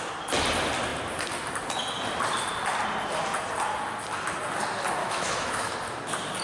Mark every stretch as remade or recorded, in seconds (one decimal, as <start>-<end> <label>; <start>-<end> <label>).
0.0-5.0 recorded; 5.0-5.7 remade; 5.7-6.4 recorded